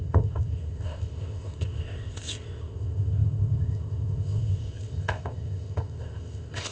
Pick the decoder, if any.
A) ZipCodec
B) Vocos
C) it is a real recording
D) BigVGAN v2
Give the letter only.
A